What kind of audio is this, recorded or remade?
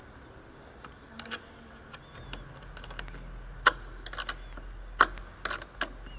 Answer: recorded